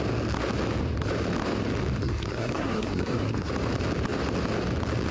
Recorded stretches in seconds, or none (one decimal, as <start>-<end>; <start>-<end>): 0.0-2.0; 3.5-5.1